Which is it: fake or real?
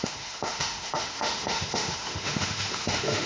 fake